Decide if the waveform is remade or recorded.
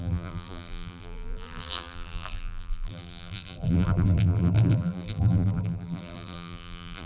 remade